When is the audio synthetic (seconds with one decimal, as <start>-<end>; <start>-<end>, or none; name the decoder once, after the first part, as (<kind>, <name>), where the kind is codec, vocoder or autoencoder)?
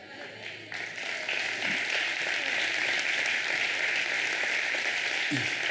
none